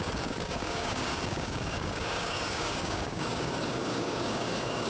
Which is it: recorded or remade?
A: remade